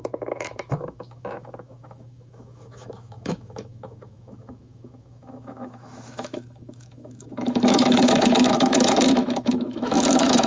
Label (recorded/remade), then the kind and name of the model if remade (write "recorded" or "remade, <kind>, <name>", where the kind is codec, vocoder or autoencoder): remade, autoencoder, DAC-VAE